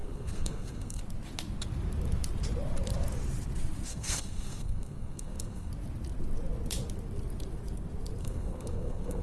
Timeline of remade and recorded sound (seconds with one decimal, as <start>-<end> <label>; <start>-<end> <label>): 0.0-1.0 remade; 1.0-3.9 recorded; 3.9-5.7 remade; 5.7-8.2 recorded; 8.2-9.2 remade